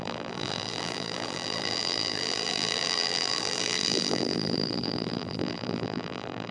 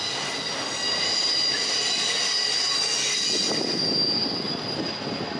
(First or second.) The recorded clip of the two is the second